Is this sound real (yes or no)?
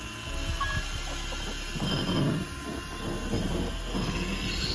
yes